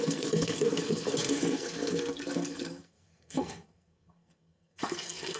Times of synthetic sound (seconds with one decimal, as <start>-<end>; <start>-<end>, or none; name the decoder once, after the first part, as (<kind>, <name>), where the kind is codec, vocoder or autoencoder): 0.0-5.4 (codec, SNAC)